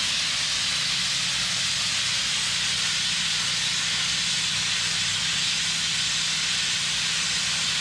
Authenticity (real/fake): real